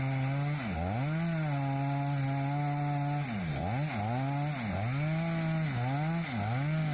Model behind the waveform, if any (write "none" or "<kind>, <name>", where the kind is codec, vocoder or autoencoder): none